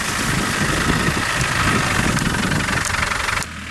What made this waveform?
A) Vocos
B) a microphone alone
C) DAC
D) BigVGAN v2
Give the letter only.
B